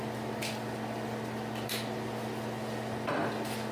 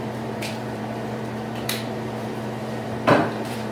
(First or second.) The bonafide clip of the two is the first